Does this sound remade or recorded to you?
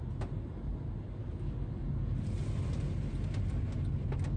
recorded